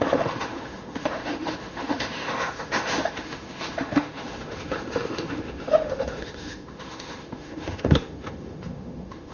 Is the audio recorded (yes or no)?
no